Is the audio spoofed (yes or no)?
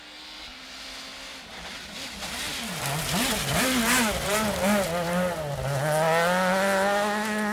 no